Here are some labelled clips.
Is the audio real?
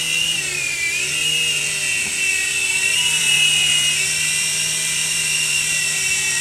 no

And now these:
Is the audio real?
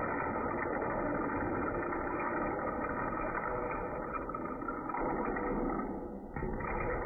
yes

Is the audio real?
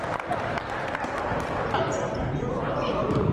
no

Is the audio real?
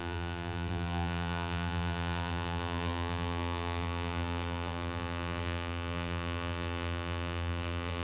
no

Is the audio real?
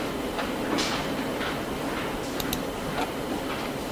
yes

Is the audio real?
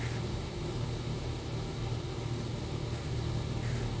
yes